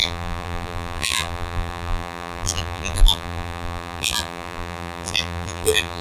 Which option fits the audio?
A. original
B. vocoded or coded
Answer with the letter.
B